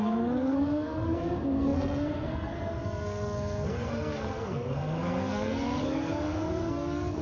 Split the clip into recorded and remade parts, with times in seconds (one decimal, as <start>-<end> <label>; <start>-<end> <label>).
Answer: 0.0-7.2 remade